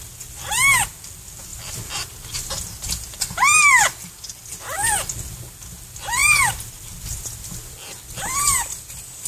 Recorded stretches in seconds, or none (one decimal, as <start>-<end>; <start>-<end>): 0.0-9.3